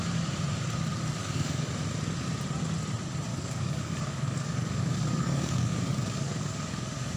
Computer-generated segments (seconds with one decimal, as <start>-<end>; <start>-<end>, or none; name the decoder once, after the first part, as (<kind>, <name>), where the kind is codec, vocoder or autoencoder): 1.2-1.7 (codec, DAC); 3.3-7.2